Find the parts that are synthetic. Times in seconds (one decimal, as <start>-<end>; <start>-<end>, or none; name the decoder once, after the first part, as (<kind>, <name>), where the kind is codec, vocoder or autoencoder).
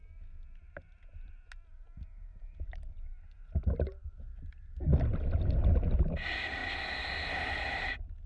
none